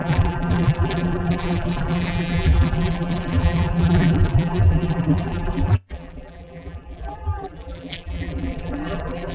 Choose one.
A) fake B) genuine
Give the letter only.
A